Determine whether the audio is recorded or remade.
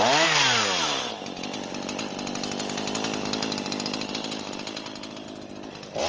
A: recorded